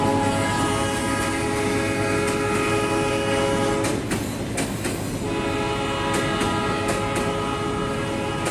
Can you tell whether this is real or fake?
real